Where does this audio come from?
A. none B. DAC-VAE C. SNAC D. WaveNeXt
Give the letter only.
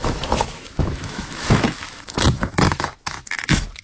B